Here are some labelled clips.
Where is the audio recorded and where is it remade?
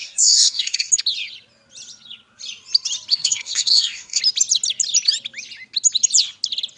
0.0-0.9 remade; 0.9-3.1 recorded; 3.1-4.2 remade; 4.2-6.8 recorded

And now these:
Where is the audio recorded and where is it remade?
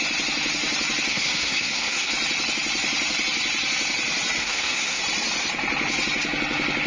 0.0-1.1 recorded; 1.1-2.1 remade; 2.1-4.4 recorded; 4.4-5.0 remade; 5.0-6.9 recorded